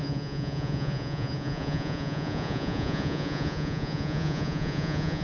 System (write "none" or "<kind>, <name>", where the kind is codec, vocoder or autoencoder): vocoder, Vocos